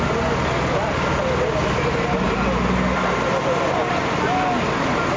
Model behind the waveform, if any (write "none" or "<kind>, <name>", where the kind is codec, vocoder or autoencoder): none